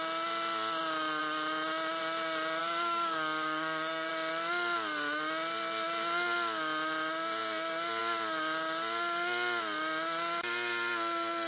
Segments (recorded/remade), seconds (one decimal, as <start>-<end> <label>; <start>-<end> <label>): 0.0-2.6 recorded; 2.6-4.1 remade; 4.1-11.5 recorded